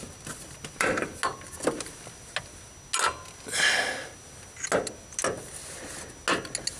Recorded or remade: recorded